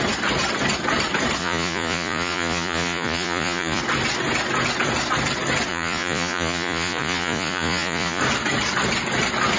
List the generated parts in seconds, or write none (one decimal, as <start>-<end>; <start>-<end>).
1.4-3.8; 5.7-8.2

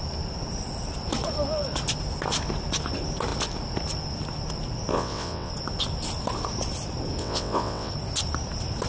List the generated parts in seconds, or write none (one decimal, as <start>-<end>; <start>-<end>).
4.9-5.5; 7.2-7.9